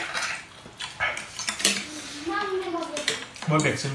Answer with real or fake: real